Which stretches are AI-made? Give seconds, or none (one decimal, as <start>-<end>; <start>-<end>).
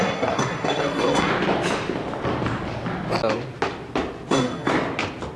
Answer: 0.0-1.3; 4.3-4.7